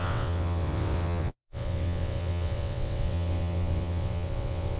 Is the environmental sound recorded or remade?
remade